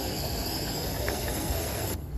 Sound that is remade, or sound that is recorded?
remade